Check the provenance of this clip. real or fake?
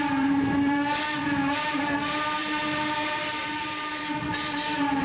fake